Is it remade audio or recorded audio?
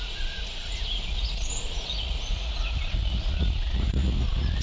remade